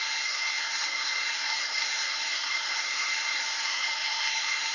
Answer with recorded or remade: remade